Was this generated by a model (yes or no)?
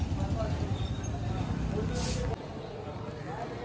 no